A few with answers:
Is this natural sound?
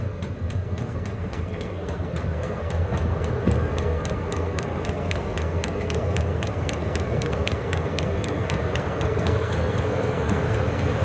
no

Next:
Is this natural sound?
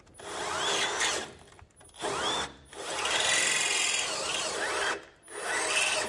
yes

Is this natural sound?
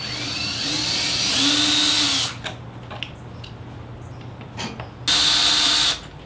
yes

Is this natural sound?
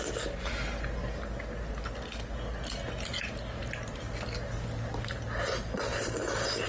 yes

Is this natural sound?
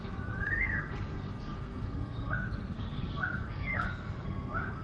no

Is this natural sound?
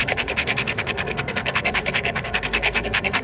no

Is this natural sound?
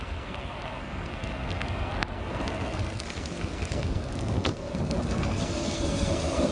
no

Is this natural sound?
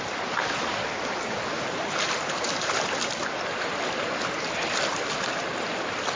yes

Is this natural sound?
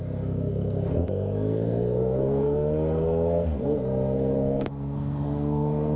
no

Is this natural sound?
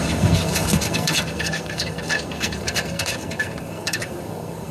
no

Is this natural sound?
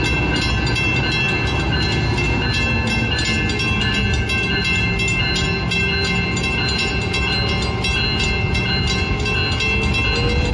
yes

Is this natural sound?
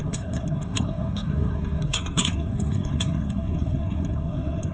no